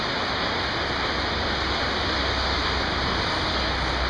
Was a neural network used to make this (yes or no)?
no